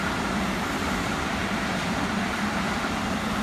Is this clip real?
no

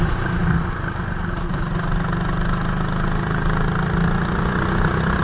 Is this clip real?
yes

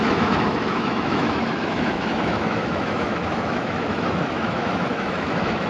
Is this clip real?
no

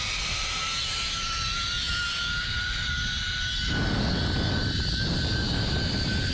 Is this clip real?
yes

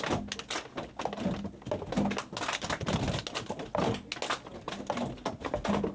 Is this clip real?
yes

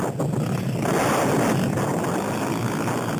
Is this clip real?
yes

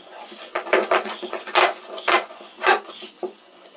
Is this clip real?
no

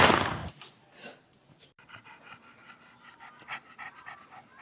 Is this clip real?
yes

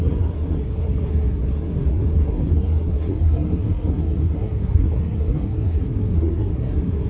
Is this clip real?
no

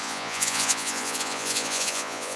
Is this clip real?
no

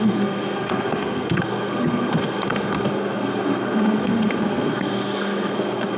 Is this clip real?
no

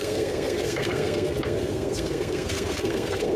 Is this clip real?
no